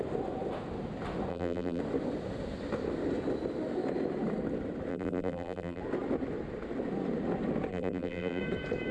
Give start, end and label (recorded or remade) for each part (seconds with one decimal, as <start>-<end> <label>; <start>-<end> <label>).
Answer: 0.0-1.3 recorded; 1.3-1.8 remade; 1.8-4.9 recorded; 4.9-5.8 remade; 5.8-7.7 recorded; 7.7-8.4 remade; 8.4-8.9 recorded